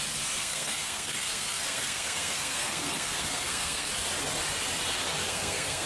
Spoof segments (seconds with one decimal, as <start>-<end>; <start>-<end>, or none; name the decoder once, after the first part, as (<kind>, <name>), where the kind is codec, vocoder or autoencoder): 0.4-3.9 (codec, SNAC); 5.2-5.9

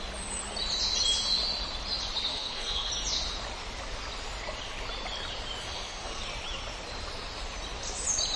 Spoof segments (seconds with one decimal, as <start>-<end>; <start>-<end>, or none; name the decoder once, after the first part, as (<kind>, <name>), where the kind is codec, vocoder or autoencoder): 2.3-2.9 (codec, SNAC); 5.6-6.2